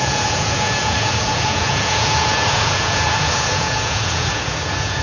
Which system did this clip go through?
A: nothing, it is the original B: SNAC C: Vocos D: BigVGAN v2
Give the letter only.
C